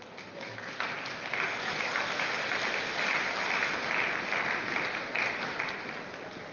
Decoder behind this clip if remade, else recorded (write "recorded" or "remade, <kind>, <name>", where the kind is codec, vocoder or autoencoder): recorded